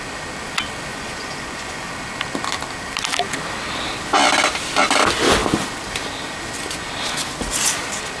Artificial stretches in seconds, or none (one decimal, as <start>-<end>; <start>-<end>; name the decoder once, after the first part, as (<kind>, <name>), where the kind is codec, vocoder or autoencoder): 0.9-1.9 (vocoder, Vocos)